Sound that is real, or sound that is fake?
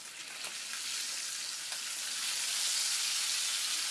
real